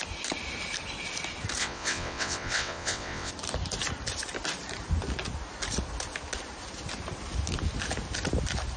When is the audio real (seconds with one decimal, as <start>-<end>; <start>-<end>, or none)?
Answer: 0.0-1.6; 3.3-8.8